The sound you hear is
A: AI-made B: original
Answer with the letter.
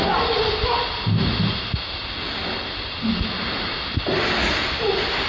B